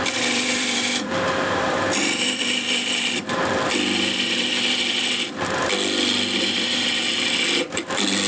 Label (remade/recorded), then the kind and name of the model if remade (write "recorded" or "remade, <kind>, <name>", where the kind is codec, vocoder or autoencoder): remade, vocoder, BigVGAN v2